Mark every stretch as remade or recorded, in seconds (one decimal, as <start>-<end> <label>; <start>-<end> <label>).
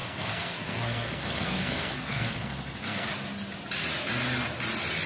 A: 0.0-3.1 remade; 3.1-5.1 recorded